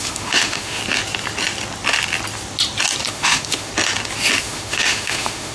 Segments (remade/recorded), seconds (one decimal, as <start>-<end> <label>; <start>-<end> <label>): 0.0-0.8 remade; 0.8-3.1 recorded; 3.1-3.7 remade; 3.7-4.4 recorded; 4.4-5.5 remade